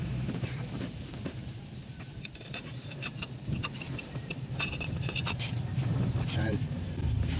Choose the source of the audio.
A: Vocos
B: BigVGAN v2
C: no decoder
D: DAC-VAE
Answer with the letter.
B